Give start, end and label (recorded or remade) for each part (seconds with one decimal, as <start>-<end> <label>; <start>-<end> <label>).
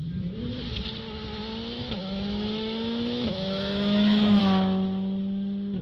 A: 0.0-1.8 recorded; 1.8-4.4 remade; 4.4-5.8 recorded